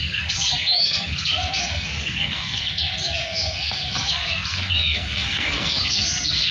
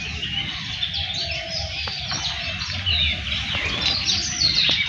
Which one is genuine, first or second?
second